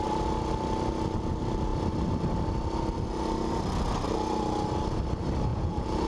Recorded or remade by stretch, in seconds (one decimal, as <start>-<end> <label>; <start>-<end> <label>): 0.0-5.5 recorded; 5.5-6.1 remade